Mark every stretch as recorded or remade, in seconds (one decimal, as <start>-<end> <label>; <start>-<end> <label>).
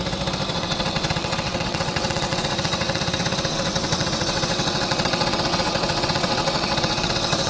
0.0-0.5 recorded; 0.5-7.5 remade